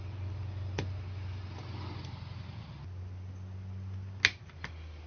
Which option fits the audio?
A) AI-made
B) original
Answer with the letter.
B